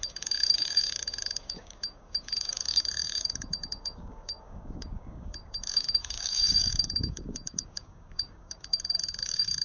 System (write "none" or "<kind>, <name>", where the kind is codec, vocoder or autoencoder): codec, DAC